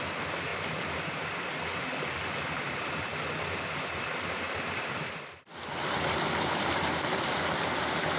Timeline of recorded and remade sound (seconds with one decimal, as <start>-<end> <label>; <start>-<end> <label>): 0.0-8.2 recorded